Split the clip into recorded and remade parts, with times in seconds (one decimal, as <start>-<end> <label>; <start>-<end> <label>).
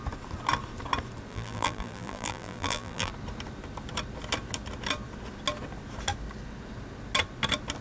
0.0-1.3 recorded; 1.3-3.1 remade; 3.1-7.8 recorded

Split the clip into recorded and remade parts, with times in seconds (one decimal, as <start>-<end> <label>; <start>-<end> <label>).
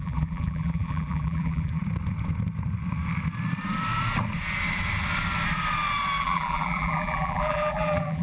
0.0-1.8 remade; 1.8-6.2 recorded; 6.2-8.2 remade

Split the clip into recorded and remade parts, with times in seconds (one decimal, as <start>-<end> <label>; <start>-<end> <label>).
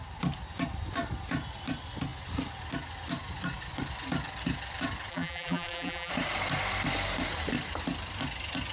0.0-5.1 recorded; 5.1-6.1 remade; 6.1-8.7 recorded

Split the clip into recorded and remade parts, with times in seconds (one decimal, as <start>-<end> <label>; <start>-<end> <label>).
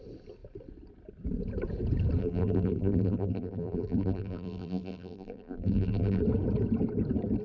0.0-2.2 recorded; 2.2-6.2 remade; 6.2-7.4 recorded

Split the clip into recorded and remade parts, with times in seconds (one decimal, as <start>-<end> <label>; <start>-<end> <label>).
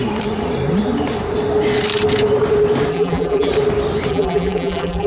0.0-2.9 recorded; 2.9-3.5 remade; 3.5-4.1 recorded; 4.1-5.1 remade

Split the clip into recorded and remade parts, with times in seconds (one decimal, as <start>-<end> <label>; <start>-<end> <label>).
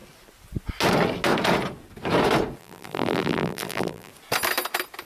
0.0-2.6 recorded; 2.6-4.1 remade; 4.1-5.0 recorded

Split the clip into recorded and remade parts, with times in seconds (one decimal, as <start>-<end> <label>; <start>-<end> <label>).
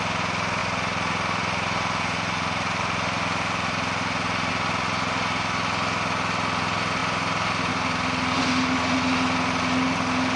0.0-0.6 recorded; 0.6-4.5 remade; 4.5-10.4 recorded